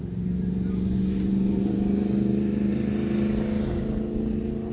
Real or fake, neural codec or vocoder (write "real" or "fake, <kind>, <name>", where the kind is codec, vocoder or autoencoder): real